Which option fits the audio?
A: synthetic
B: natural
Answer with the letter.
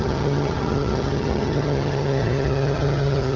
A